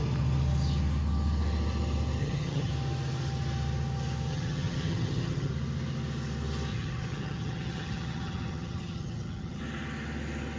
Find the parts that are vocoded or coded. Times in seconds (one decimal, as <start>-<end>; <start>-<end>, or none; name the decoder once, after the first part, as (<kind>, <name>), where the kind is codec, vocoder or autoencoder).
2.2-2.7 (vocoder, HiFi-GAN); 4.3-5.5; 6.7-9.6